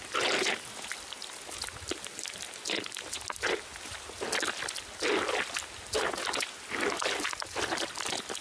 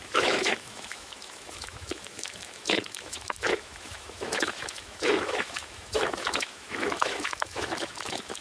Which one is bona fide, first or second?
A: first